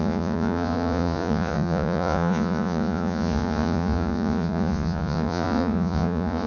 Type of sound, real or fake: fake